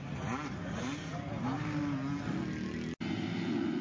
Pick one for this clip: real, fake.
real